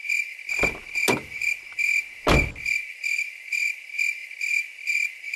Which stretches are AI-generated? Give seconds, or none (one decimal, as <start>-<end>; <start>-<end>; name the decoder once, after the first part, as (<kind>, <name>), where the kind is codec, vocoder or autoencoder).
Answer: none